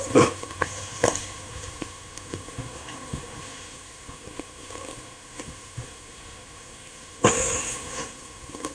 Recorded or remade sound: remade